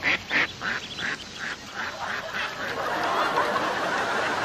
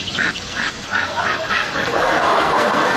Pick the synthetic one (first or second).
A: second